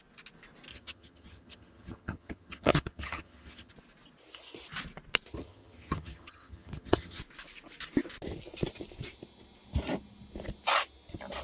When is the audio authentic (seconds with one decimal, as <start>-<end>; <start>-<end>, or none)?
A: 0.0-0.7; 3.7-5.4; 7.2-11.4